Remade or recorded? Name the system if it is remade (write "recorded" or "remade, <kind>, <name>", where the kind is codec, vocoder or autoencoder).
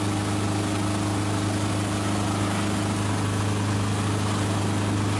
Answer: recorded